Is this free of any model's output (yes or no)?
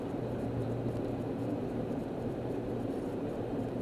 no